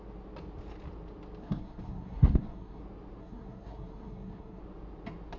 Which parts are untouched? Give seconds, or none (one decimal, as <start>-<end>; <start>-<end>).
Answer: 0.0-1.4; 2.8-3.2; 4.6-5.4